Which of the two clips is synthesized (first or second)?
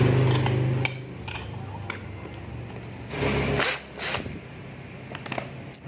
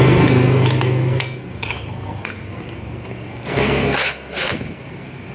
second